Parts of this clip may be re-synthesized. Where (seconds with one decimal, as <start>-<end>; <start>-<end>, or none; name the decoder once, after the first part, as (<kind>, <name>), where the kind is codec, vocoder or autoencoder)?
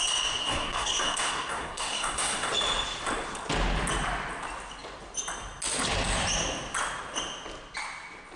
0.4-2.5 (codec, SNAC)